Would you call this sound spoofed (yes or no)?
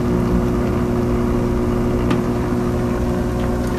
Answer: no